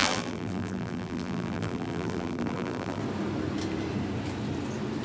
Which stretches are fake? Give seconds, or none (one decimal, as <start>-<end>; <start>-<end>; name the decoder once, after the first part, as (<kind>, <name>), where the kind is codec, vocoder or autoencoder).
0.0-3.0 (vocoder, BigVGAN v2)